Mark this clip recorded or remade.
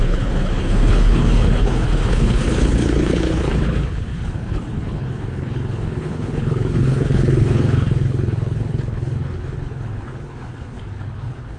remade